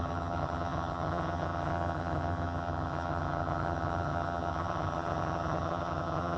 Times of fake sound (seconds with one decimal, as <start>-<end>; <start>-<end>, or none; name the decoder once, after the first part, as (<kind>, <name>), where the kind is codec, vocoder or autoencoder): 0.0-6.4 (vocoder, HiFi-GAN)